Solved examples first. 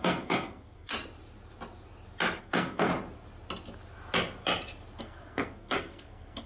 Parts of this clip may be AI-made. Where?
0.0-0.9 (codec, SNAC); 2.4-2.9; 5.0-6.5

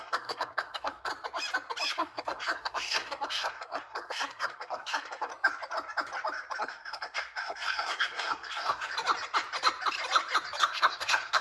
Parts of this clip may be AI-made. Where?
0.0-1.1 (codec, SNAC); 1.9-5.3; 6.6-8.9; 10.6-11.4

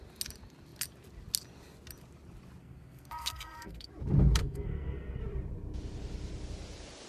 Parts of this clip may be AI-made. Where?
2.6-3.9 (codec, SNAC); 4.4-5.2

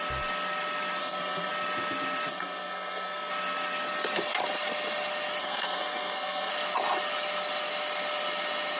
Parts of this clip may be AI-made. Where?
1.0-1.5 (codec, SNAC); 2.3-3.3; 5.4-6.5

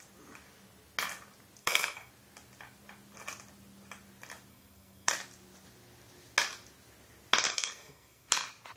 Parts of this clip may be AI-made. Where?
1.6-2.1 (codec, SNAC); 4.5-5.1; 7.5-8.3

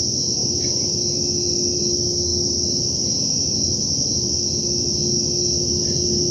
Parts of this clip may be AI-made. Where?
none